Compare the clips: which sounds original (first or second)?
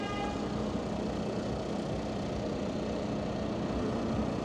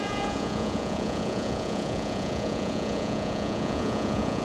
first